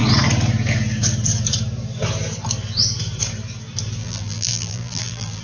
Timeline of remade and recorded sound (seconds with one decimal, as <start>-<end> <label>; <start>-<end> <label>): 0.0-4.0 recorded; 4.0-5.4 remade